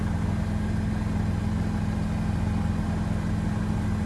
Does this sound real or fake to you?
real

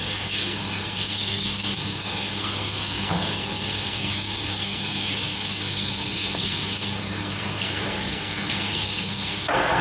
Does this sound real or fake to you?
fake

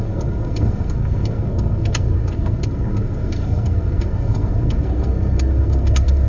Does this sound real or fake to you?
fake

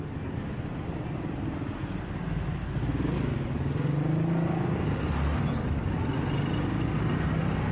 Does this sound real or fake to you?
real